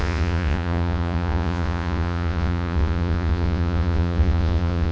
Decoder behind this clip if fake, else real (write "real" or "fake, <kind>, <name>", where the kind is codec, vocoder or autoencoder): fake, vocoder, Vocos